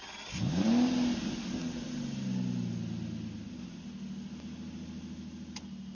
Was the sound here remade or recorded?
recorded